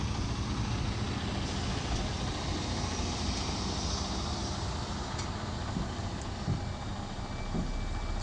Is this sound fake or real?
real